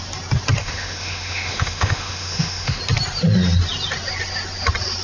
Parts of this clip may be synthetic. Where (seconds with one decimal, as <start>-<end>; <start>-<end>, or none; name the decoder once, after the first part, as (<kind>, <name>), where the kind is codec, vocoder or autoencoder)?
0.6-2.8 (autoencoder, DAC-VAE)